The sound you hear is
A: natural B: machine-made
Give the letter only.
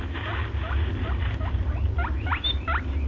A